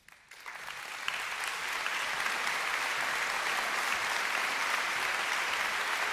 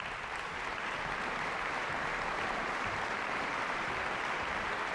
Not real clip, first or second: second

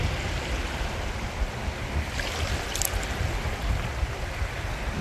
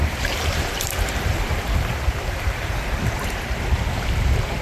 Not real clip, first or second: second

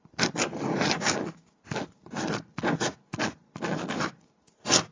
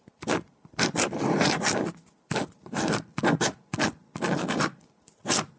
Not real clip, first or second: second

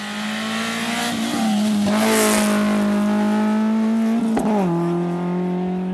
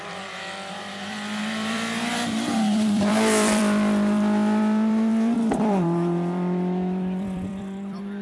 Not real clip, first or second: second